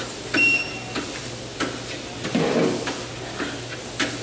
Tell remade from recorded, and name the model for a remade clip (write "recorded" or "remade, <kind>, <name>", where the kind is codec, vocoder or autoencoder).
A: recorded